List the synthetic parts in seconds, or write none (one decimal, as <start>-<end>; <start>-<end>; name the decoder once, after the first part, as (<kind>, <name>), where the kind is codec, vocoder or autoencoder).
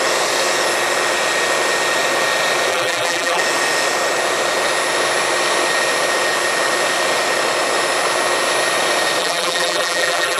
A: 2.7-3.4 (vocoder, BigVGAN v2); 9.2-10.4